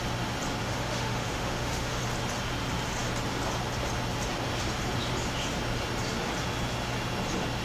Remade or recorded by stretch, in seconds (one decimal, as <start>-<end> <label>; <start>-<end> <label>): 0.0-0.6 recorded; 0.6-2.0 remade; 2.0-7.6 recorded